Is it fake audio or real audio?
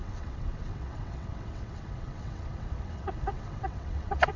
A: fake